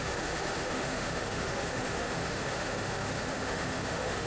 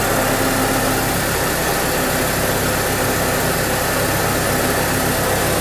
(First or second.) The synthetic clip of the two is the first